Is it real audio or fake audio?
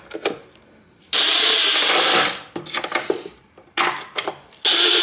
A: real